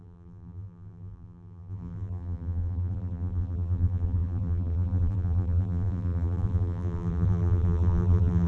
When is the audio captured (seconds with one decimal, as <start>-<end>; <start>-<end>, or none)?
none